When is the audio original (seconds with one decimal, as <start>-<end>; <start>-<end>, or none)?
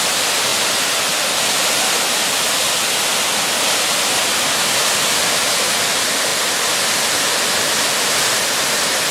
0.0-9.1